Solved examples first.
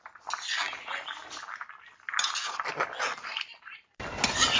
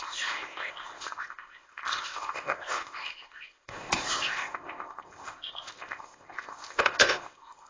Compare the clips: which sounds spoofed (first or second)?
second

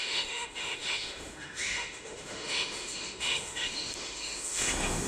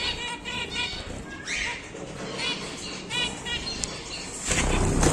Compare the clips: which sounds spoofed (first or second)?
first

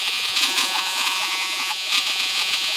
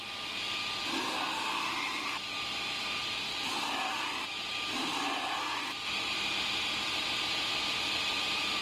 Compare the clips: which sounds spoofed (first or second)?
first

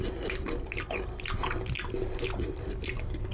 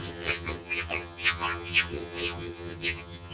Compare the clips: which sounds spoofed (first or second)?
second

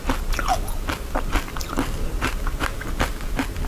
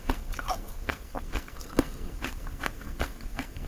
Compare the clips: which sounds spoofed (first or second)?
second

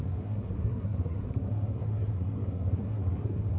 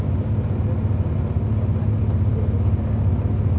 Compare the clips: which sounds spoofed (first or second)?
first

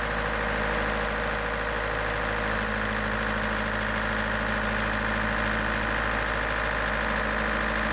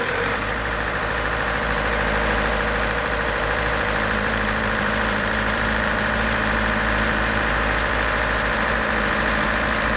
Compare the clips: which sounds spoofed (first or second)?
second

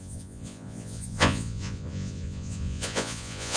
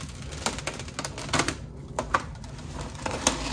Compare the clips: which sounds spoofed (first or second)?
first